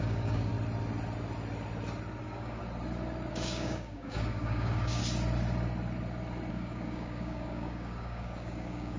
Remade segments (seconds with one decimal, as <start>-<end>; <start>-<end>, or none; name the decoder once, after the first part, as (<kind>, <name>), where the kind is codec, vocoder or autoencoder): 0.0-0.5 (codec, DAC); 2.2-2.6; 3.3-5.0; 6.5-9.0